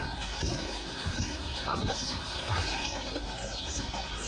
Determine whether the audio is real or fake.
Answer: fake